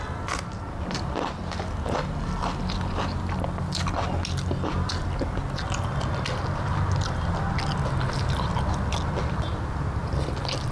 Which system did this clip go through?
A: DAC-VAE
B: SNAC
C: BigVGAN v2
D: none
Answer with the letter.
D